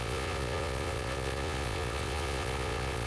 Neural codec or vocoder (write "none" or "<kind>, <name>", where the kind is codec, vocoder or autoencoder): vocoder, Vocos